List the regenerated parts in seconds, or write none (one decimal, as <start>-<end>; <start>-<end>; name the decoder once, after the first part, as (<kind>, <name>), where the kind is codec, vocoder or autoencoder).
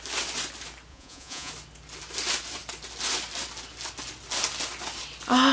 0.9-1.5 (vocoder, Vocos)